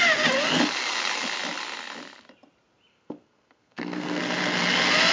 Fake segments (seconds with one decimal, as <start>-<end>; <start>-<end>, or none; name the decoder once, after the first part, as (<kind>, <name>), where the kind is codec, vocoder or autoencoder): 2.9-4.2 (codec, SNAC)